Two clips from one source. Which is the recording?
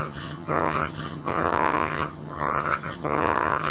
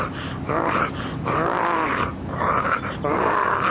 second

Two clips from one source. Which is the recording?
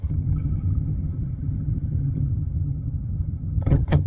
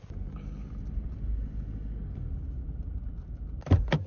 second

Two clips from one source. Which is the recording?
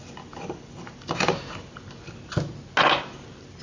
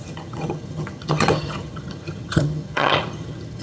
first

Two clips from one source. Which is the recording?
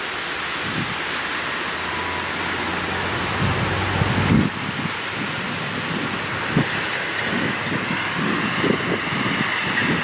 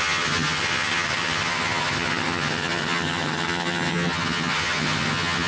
first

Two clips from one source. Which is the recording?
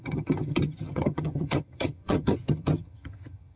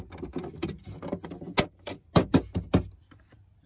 second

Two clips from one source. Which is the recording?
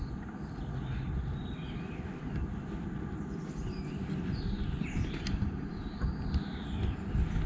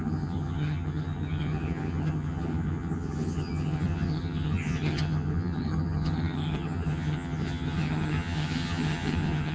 first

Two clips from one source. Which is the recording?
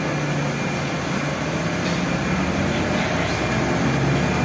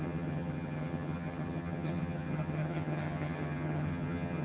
first